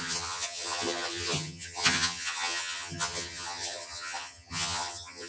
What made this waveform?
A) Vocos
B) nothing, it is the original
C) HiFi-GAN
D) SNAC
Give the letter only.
C